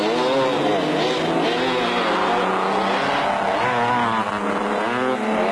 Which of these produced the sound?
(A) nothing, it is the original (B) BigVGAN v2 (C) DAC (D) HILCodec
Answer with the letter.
A